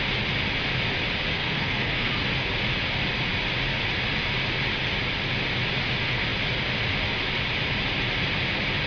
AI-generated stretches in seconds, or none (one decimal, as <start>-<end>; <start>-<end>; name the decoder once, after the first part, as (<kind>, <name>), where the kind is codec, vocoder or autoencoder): 1.3-2.1 (codec, SNAC)